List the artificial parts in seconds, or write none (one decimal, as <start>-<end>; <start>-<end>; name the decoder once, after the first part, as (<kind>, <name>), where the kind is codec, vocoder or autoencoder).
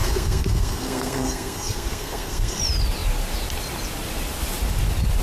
0.0-2.6 (codec, SNAC)